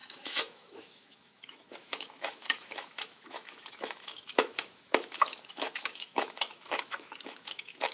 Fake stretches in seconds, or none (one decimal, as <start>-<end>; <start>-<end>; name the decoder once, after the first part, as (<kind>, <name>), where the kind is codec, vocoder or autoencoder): 0.0-7.9 (autoencoder, DAC-VAE)